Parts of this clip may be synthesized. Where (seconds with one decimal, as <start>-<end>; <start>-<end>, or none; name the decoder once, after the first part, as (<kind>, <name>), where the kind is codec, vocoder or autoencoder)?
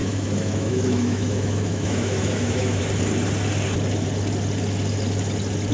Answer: 0.0-2.8 (autoencoder, DAC-VAE)